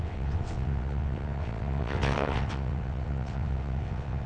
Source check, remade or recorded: remade